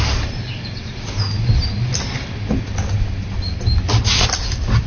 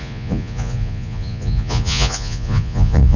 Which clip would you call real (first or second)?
first